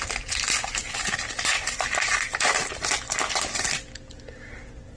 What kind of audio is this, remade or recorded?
recorded